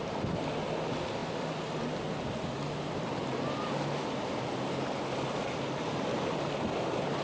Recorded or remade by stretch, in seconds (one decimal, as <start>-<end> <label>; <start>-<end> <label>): 0.0-7.2 recorded